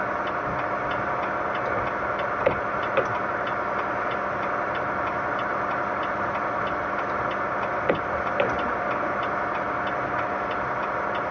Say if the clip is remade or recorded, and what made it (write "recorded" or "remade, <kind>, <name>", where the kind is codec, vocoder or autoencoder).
recorded